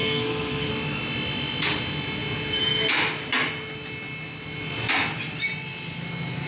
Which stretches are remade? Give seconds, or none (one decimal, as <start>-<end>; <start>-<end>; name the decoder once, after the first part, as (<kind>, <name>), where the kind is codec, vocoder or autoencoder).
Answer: 0.0-0.7 (codec, SNAC)